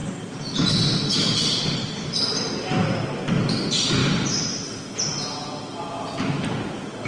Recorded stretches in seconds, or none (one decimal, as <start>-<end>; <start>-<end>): 0.0-7.1